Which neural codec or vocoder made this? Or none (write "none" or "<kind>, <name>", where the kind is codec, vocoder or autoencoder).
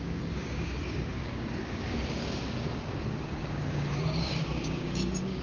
codec, DAC